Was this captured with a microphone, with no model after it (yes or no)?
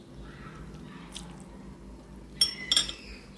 yes